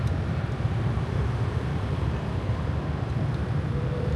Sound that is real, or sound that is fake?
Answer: fake